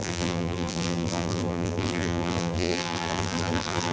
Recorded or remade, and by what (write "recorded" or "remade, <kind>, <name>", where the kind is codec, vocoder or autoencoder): remade, vocoder, BigVGAN v2